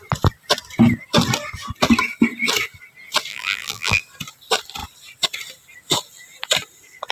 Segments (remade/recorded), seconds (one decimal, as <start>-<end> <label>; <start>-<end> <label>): 0.0-3.3 recorded; 3.3-4.0 remade; 4.0-7.1 recorded